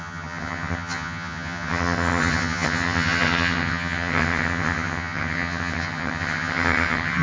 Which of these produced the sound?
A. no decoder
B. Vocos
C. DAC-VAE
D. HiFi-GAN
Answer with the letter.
D